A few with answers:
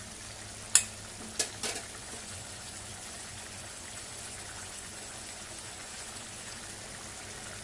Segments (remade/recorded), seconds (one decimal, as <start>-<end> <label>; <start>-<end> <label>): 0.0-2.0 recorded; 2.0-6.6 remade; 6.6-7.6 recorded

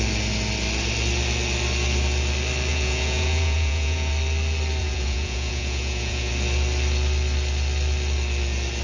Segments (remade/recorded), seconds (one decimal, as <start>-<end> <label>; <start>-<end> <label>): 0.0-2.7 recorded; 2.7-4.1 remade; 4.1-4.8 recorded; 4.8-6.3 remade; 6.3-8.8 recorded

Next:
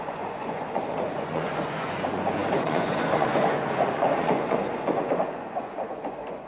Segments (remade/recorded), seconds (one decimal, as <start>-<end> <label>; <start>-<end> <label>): 0.0-6.5 remade

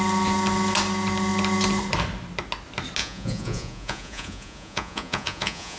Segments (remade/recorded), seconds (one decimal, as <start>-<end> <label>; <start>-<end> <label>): 0.0-3.0 recorded; 3.0-5.8 remade

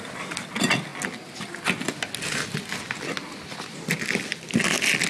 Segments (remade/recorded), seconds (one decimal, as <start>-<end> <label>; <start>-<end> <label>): 0.0-5.1 recorded